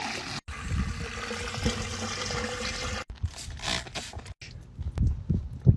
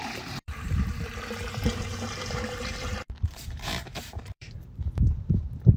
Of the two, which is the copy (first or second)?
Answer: second